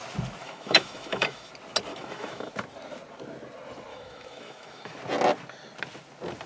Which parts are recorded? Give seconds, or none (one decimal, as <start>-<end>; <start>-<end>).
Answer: 0.0-0.4; 1.5-1.9; 2.5-3.9; 4.9-6.5

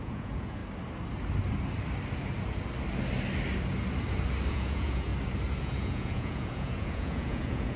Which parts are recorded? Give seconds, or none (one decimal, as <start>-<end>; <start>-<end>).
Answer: 0.6-4.5; 5.1-5.6